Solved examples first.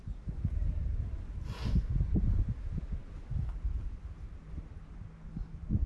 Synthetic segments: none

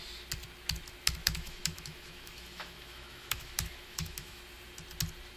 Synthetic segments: 1.2-4.4 (autoencoder, DAC-VAE)

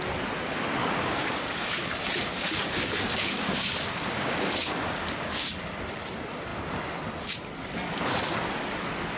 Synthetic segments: 0.8-5.5 (codec, DAC)

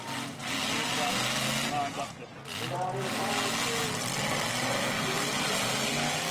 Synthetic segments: none

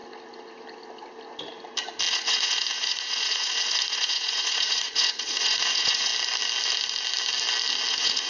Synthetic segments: 2.1-6.1 (vocoder, Vocos); 7.9-8.3

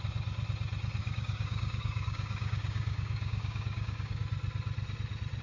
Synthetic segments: 1.0-4.2 (codec, DAC)

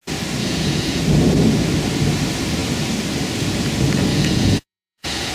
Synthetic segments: 0.4-1.0 (vocoder, Vocos); 4.1-5.3